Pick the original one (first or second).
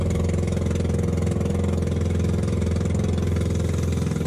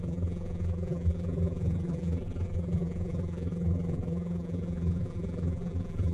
first